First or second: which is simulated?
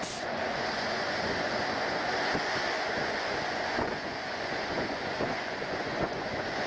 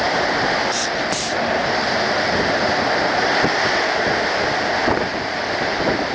first